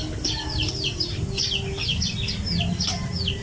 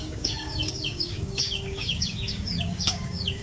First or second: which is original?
first